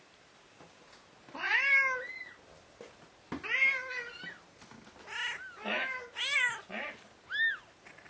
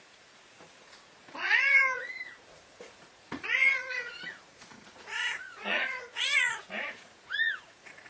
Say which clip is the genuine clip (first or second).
first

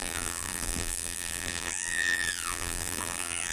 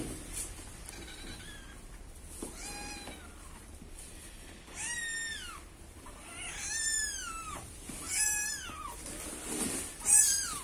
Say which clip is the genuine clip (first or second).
second